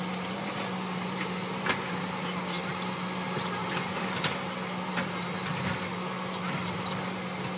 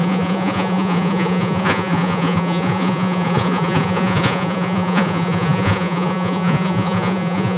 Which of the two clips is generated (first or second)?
second